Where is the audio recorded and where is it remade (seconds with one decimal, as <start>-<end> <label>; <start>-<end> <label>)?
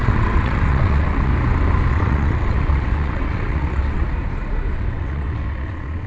0.0-1.3 remade; 1.3-1.9 recorded; 1.9-4.0 remade; 4.0-4.7 recorded; 4.7-6.1 remade